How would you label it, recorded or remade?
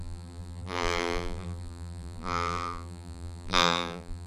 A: remade